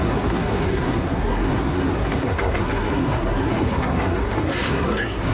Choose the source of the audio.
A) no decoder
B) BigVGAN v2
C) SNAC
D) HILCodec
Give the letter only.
C